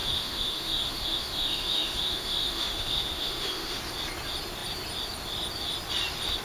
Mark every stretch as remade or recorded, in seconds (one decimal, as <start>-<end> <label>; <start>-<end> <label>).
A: 0.0-3.8 remade; 3.8-6.4 recorded